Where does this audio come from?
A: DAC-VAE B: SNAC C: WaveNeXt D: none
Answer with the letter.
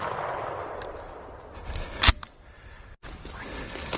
D